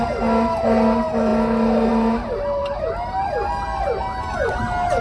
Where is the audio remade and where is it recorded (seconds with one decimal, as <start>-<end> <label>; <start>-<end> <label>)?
0.0-5.0 recorded